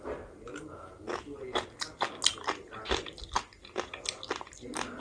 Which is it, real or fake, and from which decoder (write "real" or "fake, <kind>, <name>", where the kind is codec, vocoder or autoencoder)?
real